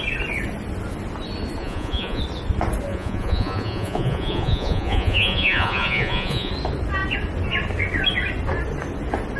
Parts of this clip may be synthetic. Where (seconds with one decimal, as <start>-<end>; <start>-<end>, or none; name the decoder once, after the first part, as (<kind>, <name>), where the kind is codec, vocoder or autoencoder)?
1.6-2.2 (vocoder, Vocos); 2.9-6.5